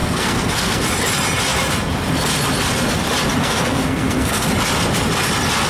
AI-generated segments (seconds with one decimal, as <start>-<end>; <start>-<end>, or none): 0.0-0.8; 3.4-4.5